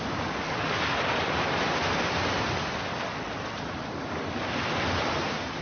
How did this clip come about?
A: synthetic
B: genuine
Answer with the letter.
B